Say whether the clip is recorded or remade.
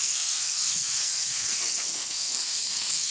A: remade